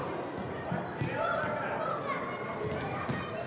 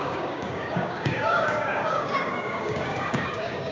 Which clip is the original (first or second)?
first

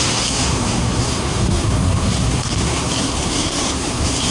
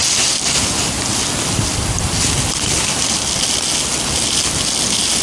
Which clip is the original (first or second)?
second